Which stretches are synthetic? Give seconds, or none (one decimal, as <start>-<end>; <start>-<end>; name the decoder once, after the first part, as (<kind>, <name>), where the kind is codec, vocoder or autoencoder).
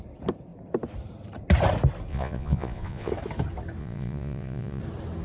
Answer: 2.1-3.1 (vocoder, Vocos); 3.8-4.8